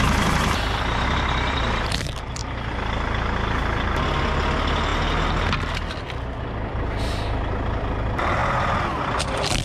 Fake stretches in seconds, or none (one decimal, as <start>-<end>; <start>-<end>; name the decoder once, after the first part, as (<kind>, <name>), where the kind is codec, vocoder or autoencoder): 0.0-2.4 (vocoder, BigVGAN v2); 4.3-4.9; 6.4-9.6